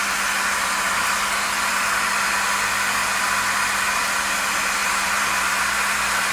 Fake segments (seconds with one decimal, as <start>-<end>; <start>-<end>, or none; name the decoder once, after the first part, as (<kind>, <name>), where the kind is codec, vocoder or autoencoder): 4.8-5.4 (vocoder, BigVGAN v2)